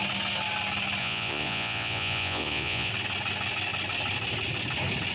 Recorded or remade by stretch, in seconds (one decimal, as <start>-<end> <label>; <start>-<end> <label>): 0.0-1.0 recorded; 1.0-2.9 remade; 2.9-5.1 recorded